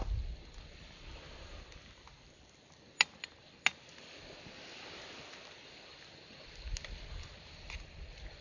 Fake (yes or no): no